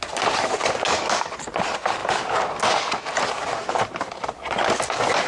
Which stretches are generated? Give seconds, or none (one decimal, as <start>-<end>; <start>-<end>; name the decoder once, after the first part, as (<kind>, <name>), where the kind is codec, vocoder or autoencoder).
none